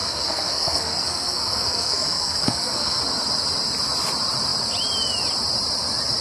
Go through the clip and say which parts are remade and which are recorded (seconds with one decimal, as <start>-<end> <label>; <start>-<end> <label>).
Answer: 0.0-3.0 remade; 3.0-6.2 recorded